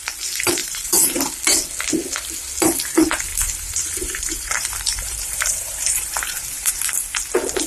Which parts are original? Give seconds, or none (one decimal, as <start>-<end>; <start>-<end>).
0.0-0.6; 1.2-3.3; 6.7-7.7